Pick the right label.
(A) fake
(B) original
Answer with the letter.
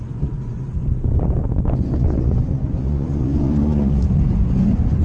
A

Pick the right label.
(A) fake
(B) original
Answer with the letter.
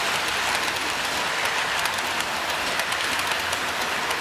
B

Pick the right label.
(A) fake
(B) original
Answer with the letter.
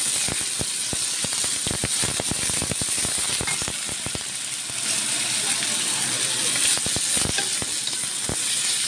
B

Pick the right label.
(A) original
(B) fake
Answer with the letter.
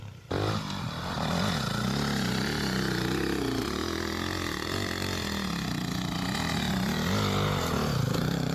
A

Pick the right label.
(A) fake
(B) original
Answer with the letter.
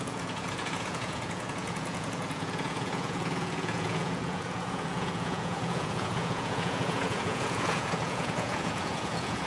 A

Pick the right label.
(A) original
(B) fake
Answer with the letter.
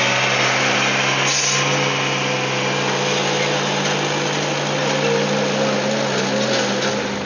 A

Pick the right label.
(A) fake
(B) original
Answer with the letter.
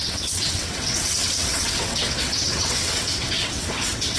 A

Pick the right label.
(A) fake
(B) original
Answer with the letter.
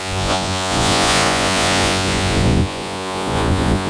A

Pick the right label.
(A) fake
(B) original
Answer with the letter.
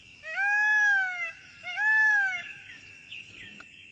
A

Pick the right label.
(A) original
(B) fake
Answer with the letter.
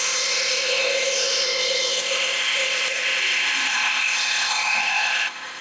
B